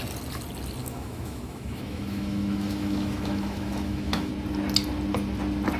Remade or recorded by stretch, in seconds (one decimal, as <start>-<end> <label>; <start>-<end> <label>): 0.0-0.8 recorded; 0.8-4.3 remade; 4.3-5.8 recorded